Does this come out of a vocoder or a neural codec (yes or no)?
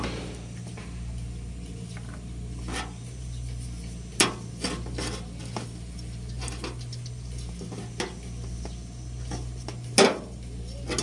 no